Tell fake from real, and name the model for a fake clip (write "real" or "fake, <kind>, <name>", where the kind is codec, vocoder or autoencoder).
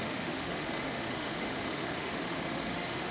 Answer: fake, autoencoder, DAC-VAE